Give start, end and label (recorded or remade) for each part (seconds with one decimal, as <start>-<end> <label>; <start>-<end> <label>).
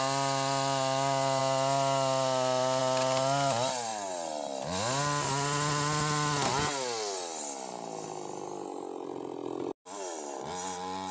0.0-11.1 recorded